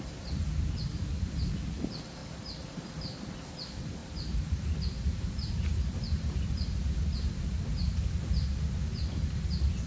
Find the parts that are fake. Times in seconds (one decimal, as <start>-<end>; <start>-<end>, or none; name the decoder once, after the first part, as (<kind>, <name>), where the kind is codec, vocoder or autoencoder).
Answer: 2.2-2.8 (vocoder, BigVGAN v2); 4.0-7.0